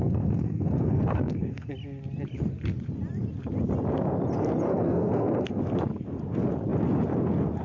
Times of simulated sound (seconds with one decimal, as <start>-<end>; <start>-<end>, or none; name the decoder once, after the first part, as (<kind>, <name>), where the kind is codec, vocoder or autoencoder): 0.0-1.7 (codec, SNAC); 4.7-5.6